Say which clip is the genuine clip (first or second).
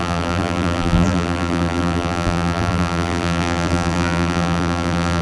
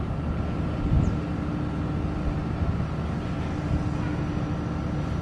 second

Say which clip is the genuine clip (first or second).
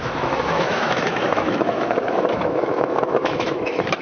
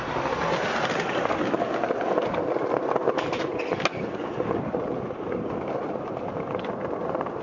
second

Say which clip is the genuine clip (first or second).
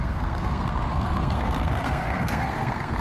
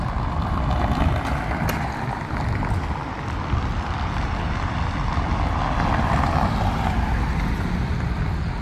second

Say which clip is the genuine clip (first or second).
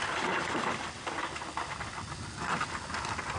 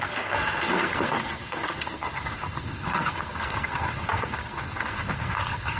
first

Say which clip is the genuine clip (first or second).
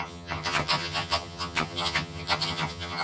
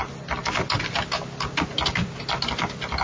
second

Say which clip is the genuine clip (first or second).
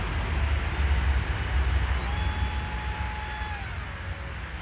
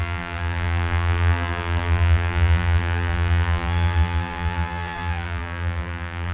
first